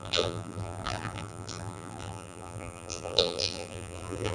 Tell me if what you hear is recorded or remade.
remade